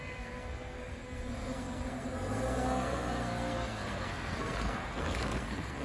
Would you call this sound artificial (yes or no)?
yes